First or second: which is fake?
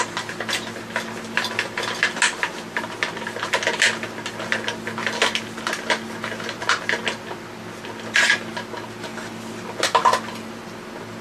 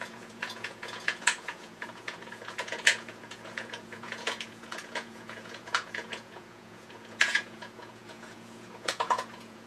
second